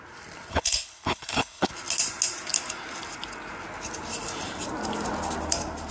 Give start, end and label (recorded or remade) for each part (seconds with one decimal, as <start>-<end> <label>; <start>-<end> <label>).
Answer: 0.0-0.5 recorded; 0.5-1.7 remade; 1.7-5.9 recorded